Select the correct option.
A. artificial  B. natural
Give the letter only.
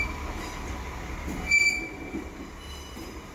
B